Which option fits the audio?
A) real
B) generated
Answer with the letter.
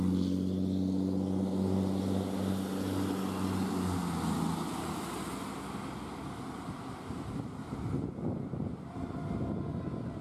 A